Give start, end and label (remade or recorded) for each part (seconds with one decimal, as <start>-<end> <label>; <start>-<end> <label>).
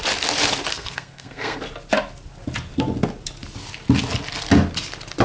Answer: 0.0-0.7 recorded; 0.7-1.6 remade; 1.6-5.2 recorded